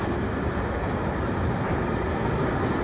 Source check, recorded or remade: recorded